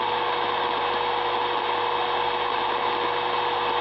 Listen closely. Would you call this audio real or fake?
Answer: real